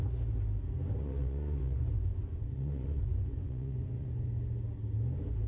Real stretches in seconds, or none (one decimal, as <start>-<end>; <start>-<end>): 0.0-1.0; 4.3-5.5